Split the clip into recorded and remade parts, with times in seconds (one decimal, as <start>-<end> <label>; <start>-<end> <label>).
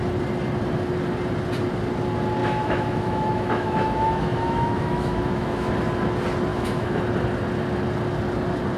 0.0-2.4 recorded; 2.4-5.7 remade; 5.7-6.5 recorded; 6.5-7.0 remade; 7.0-8.8 recorded